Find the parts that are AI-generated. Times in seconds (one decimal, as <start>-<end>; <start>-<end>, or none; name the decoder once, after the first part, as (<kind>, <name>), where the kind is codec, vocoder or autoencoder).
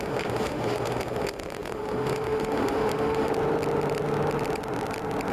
0.0-3.3 (autoencoder, DAC-VAE)